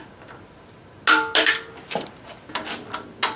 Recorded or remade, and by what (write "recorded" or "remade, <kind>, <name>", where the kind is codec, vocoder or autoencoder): recorded